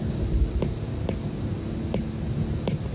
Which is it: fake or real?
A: real